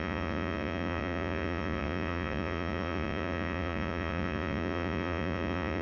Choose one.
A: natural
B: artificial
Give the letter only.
B